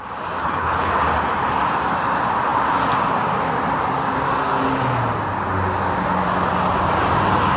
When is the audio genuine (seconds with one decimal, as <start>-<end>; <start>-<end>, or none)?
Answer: 0.0-0.4; 0.9-7.6